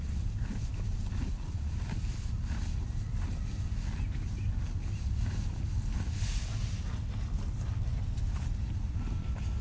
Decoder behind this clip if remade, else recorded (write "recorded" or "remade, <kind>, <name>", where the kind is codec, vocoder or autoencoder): recorded